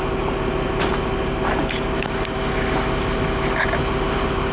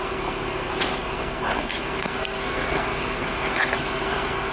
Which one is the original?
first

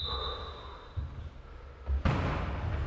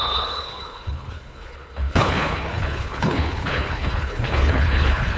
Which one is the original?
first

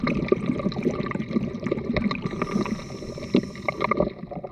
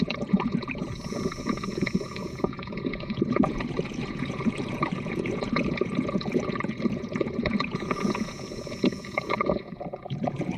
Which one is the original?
first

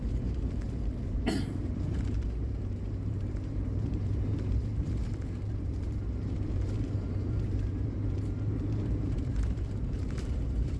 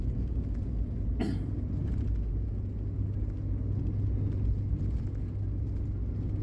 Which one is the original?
second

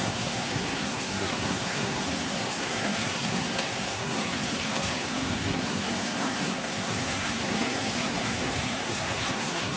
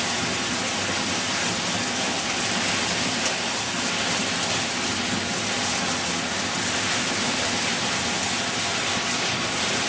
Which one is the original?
second